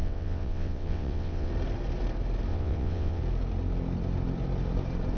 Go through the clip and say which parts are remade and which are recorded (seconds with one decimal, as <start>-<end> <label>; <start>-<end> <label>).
0.0-1.5 remade; 1.5-2.5 recorded; 2.5-3.2 remade; 3.2-5.2 recorded